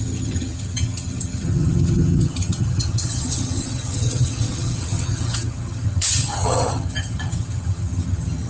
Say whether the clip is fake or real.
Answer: fake